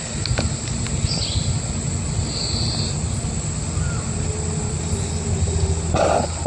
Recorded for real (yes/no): yes